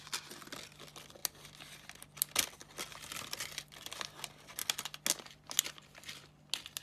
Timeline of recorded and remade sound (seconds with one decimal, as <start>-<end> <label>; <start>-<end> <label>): 0.0-6.8 recorded